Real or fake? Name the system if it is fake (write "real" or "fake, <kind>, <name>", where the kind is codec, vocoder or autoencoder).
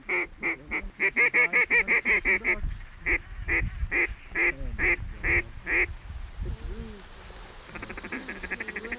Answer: real